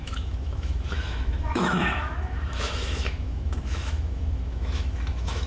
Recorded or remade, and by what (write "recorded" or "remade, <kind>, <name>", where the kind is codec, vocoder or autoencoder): remade, autoencoder, DAC-VAE